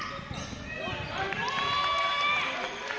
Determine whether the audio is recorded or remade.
recorded